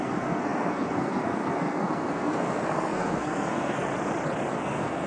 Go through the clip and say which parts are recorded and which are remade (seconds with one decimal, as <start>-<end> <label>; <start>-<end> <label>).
0.0-3.9 remade; 3.9-4.5 recorded; 4.5-5.1 remade

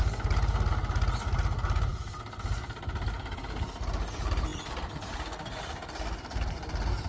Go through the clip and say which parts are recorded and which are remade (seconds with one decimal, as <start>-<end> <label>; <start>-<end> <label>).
0.0-7.1 recorded

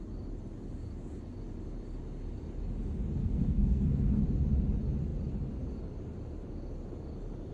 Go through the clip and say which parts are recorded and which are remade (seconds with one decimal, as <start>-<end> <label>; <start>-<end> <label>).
0.0-3.2 recorded; 3.2-4.2 remade; 4.2-7.5 recorded

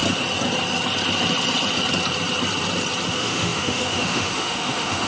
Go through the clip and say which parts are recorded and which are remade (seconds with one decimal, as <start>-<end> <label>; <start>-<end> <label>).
0.0-3.1 recorded; 3.1-5.1 remade

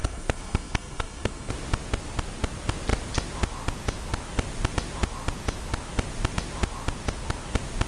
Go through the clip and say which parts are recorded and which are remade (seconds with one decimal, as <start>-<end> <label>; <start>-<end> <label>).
0.0-1.5 remade; 1.5-7.9 recorded